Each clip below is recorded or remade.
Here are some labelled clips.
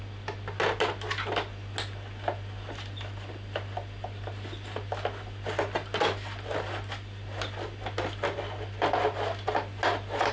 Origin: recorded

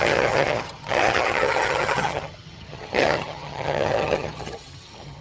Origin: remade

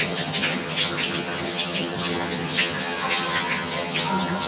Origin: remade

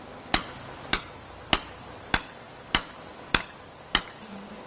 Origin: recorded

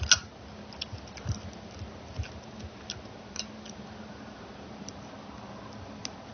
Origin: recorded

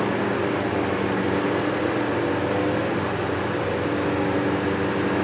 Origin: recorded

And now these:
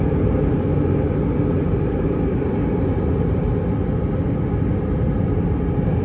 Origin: recorded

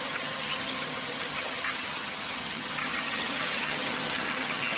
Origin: remade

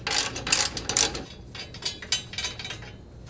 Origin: recorded